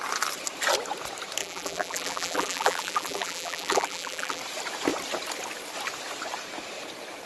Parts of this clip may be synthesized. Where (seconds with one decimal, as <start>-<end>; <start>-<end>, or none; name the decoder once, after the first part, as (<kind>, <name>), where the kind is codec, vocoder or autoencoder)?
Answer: 1.4-4.4 (vocoder, BigVGAN v2)